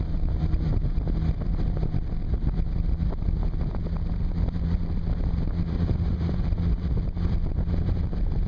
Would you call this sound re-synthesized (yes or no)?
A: yes